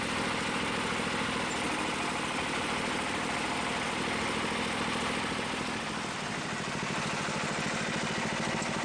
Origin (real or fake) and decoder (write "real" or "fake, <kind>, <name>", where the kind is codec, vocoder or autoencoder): real